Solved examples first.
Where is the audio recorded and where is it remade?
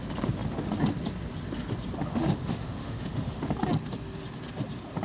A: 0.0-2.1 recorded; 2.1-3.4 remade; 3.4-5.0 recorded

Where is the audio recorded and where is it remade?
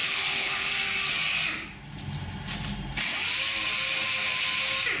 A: 0.0-0.7 remade; 0.7-5.0 recorded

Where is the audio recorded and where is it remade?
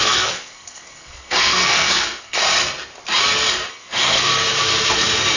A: 0.0-2.4 remade; 2.4-3.7 recorded; 3.7-4.3 remade; 4.3-5.4 recorded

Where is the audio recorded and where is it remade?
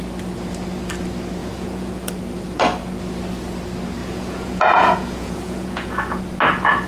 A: 0.0-1.4 recorded; 1.4-2.1 remade; 2.1-4.0 recorded; 4.0-6.2 remade; 6.2-6.9 recorded